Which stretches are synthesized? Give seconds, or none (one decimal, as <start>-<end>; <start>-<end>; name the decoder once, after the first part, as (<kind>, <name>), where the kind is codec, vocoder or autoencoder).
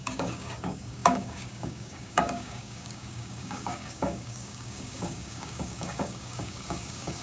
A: 0.0-7.2 (codec, DAC)